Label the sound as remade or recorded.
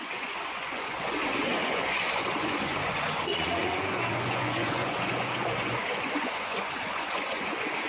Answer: remade